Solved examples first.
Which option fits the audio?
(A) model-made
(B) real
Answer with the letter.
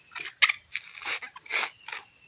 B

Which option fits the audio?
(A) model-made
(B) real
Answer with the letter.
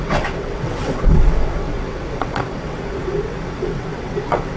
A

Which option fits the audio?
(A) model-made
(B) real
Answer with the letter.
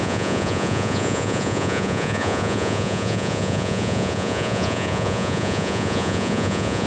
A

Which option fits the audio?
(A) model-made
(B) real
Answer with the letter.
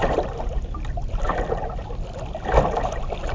B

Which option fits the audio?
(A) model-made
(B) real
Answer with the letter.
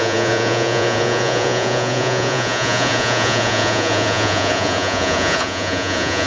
A